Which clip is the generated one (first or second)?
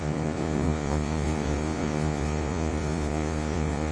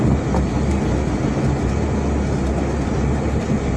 first